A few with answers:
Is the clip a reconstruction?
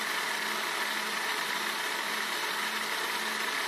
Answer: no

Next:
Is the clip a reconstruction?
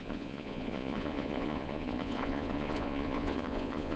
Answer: yes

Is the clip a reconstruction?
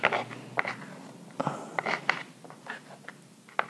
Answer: no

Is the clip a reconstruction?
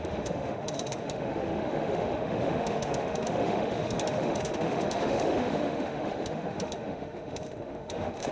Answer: yes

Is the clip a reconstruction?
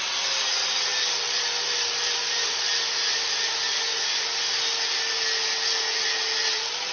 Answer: no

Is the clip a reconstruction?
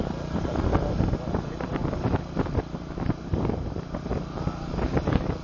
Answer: no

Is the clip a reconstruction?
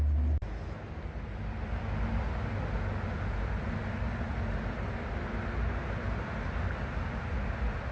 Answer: no